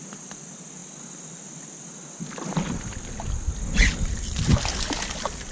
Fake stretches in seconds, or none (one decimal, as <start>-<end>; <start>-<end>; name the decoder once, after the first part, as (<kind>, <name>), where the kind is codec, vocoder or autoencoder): none